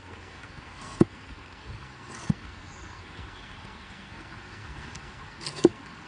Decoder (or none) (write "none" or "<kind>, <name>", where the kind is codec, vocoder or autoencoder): codec, SNAC